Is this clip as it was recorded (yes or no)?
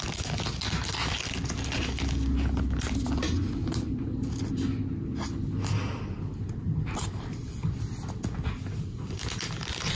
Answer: yes